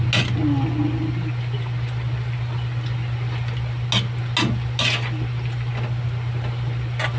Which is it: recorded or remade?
recorded